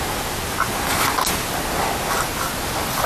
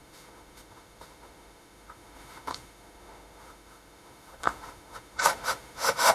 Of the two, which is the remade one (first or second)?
second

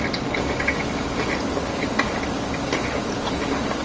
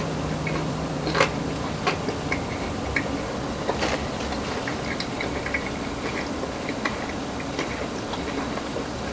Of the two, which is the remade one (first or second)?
second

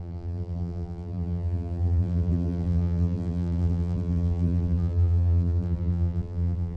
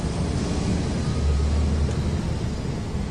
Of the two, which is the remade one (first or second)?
first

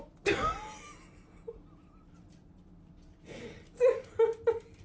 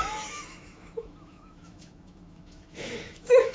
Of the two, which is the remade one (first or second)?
second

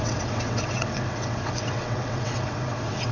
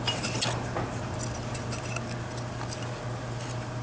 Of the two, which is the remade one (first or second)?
first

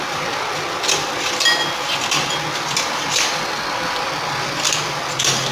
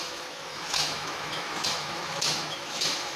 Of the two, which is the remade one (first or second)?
second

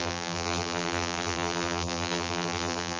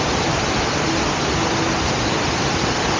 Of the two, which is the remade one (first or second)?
first